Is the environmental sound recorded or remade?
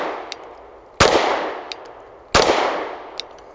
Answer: recorded